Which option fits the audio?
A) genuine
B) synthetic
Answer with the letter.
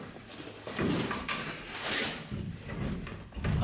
A